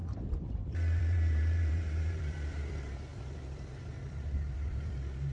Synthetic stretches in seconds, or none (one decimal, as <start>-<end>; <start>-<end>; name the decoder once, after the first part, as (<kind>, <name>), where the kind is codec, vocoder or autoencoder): 1.0-5.3 (vocoder, BigVGAN v2)